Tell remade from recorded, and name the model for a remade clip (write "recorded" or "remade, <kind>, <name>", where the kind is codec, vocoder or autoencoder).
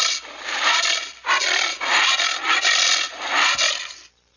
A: recorded